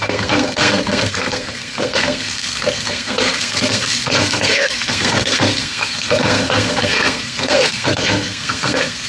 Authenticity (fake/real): fake